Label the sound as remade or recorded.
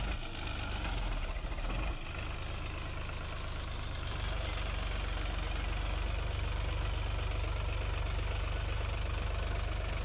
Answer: recorded